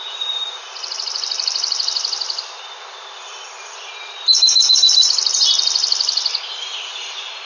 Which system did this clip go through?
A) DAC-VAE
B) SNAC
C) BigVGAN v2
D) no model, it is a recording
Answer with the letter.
C